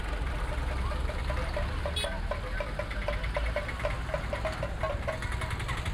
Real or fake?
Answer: real